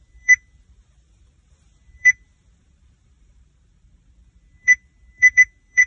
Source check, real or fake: fake